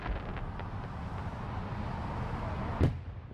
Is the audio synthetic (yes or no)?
no